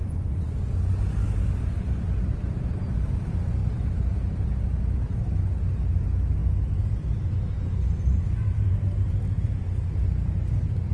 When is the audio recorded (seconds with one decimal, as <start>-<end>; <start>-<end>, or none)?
0.6-10.9